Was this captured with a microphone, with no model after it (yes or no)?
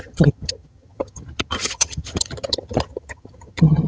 no